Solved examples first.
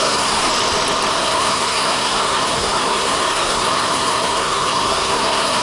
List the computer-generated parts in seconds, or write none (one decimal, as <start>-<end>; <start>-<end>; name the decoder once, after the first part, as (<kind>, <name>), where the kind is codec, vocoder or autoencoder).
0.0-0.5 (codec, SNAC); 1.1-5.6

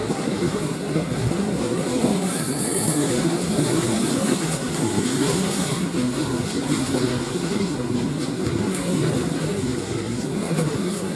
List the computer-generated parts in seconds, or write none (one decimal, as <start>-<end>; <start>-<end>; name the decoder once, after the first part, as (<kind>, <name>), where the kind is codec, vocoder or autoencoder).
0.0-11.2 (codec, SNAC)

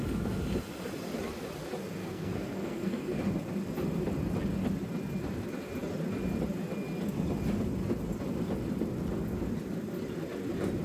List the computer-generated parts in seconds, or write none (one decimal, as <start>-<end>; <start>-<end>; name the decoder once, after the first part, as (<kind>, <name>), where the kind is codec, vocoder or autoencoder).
2.0-3.2 (codec, SNAC)

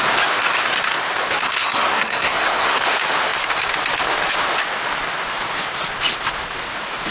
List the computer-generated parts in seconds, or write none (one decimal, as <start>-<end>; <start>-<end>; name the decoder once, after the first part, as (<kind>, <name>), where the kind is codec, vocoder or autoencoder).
1.2-2.8 (codec, SNAC)